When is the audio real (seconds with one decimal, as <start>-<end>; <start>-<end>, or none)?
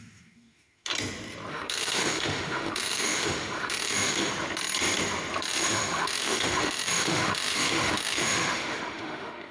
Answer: 0.9-1.5; 4.3-5.5